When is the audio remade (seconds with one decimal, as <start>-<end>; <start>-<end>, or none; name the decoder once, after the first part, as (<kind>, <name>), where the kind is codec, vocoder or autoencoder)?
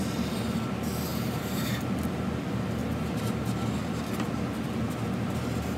1.1-2.1 (vocoder, BigVGAN v2)